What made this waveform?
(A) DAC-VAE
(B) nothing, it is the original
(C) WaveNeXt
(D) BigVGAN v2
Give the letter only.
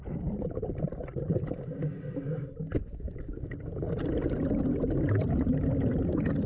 B